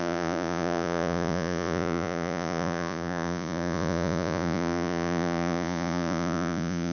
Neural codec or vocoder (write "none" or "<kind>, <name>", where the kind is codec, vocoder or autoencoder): vocoder, Vocos